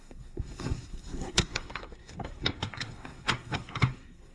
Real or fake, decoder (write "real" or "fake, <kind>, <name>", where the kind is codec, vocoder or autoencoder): fake, codec, SNAC